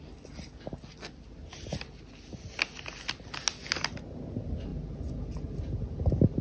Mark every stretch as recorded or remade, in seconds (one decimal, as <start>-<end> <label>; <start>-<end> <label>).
0.0-6.4 recorded